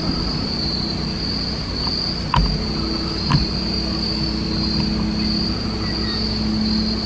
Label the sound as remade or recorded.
recorded